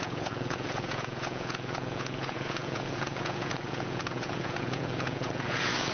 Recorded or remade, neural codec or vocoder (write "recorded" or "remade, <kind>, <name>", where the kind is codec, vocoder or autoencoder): remade, vocoder, Vocos